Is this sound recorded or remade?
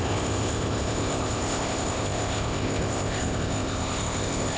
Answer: remade